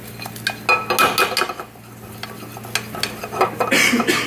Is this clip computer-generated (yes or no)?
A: no